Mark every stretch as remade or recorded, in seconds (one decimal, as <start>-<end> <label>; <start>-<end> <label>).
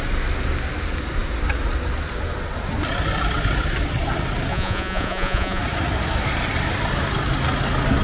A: 0.0-4.5 recorded; 4.5-5.6 remade; 5.6-8.0 recorded